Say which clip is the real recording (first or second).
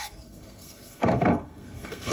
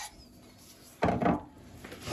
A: second